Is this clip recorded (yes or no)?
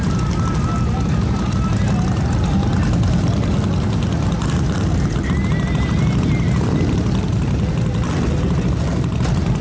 yes